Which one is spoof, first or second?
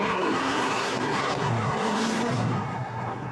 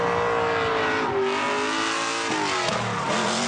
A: first